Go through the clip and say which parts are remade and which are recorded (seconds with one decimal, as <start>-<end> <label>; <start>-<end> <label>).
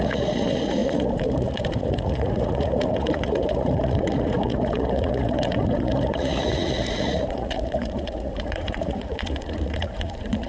0.0-10.5 remade